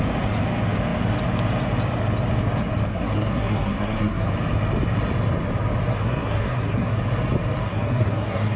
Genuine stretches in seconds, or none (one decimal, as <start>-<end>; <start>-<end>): 0.0-2.9; 4.3-5.9; 7.0-7.6